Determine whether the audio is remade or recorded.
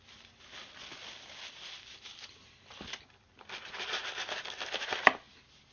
recorded